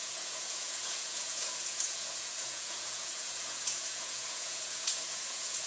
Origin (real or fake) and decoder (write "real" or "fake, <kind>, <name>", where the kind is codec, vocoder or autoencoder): fake, vocoder, Vocos